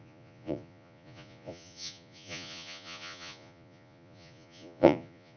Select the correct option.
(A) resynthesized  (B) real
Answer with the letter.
A